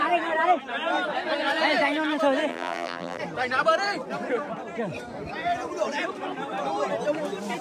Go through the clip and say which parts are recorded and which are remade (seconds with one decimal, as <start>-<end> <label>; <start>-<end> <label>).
0.0-2.5 recorded; 2.5-3.2 remade; 3.2-7.6 recorded